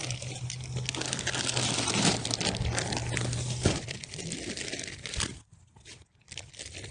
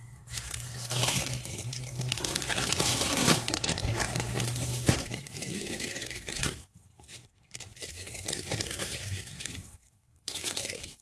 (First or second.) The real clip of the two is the first